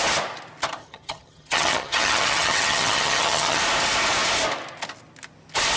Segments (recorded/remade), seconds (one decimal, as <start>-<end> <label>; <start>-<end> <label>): 0.0-0.8 recorded; 0.8-3.6 remade; 3.6-5.8 recorded